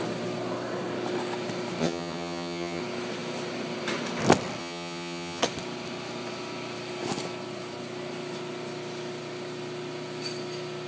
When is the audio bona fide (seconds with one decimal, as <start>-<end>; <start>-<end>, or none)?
0.0-1.8; 2.8-4.6; 5.4-10.9